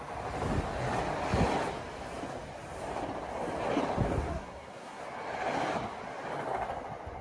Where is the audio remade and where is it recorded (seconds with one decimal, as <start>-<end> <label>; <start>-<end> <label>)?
0.0-4.3 recorded; 4.3-5.0 remade; 5.0-7.2 recorded